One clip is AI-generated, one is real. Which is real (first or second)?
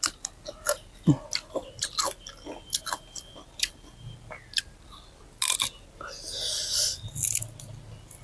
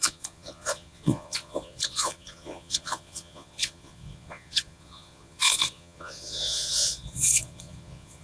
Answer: first